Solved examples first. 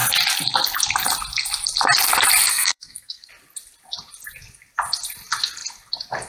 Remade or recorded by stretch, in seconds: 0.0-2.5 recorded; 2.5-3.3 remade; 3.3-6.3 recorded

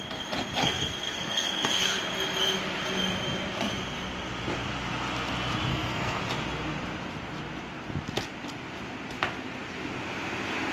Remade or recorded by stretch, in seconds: 0.0-0.6 recorded; 0.6-2.0 remade; 2.0-5.7 recorded; 5.7-6.2 remade; 6.2-10.7 recorded

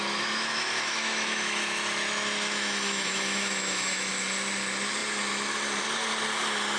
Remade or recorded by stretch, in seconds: 0.0-4.1 remade; 4.1-6.8 recorded

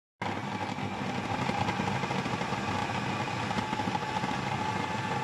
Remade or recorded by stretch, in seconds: 0.0-5.2 recorded

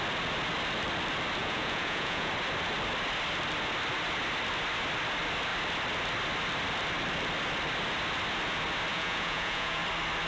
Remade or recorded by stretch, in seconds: 0.0-1.4 recorded; 1.4-2.3 remade; 2.3-8.9 recorded; 8.9-9.8 remade; 9.8-10.3 recorded

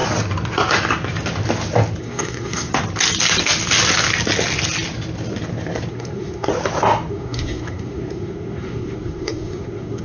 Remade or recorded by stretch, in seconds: 0.0-2.0 recorded; 2.0-2.7 remade; 2.7-5.9 recorded; 5.9-6.5 remade; 6.5-7.1 recorded; 7.1-10.0 remade

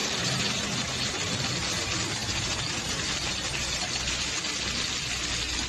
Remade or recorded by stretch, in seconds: 0.0-0.9 remade; 0.9-2.2 recorded; 2.2-3.1 remade; 3.1-5.7 recorded